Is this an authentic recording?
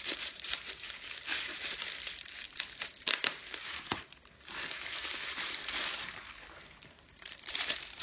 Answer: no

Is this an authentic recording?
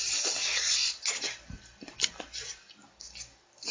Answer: no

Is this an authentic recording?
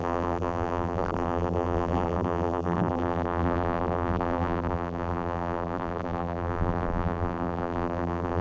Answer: no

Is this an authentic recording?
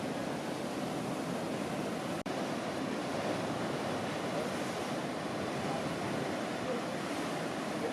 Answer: no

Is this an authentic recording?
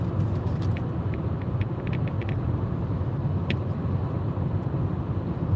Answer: yes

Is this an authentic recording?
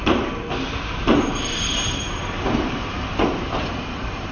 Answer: no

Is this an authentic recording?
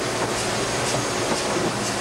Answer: yes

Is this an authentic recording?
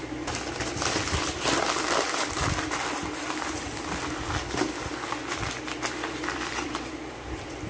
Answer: no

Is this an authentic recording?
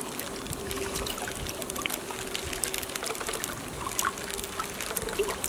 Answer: yes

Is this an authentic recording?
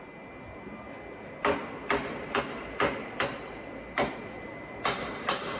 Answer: no